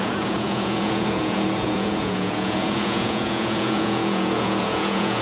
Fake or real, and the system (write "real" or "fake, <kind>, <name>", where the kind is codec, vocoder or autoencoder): fake, vocoder, Vocos